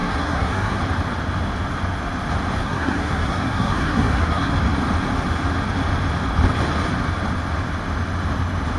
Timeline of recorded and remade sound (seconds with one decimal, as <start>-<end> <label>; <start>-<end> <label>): 0.0-0.8 remade; 0.8-2.6 recorded; 2.6-4.5 remade; 4.5-8.8 recorded